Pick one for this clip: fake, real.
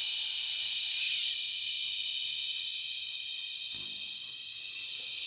real